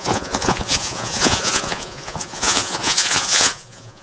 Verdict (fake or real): fake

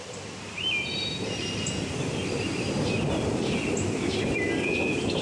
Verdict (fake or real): real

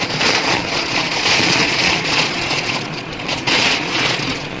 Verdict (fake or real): fake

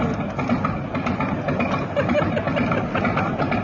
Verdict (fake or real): real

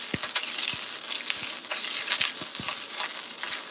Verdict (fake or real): real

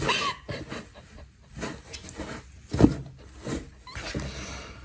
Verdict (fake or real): real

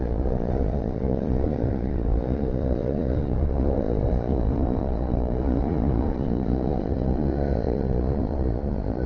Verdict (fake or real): fake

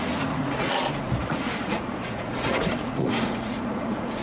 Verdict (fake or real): fake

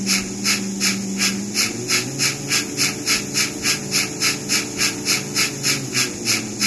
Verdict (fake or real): real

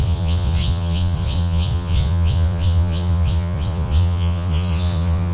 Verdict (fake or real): fake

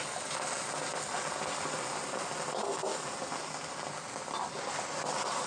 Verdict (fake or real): real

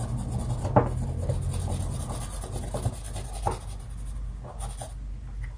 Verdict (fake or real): real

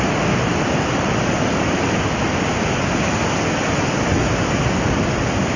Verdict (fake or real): real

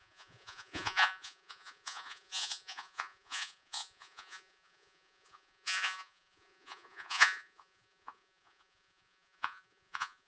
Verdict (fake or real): fake